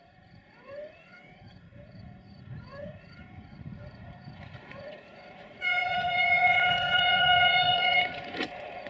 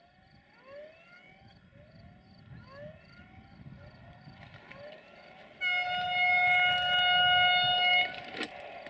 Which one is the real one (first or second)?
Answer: second